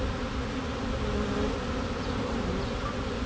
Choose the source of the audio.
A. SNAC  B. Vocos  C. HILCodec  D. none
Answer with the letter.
D